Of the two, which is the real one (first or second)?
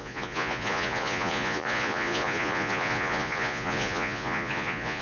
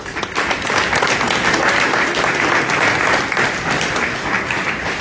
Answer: second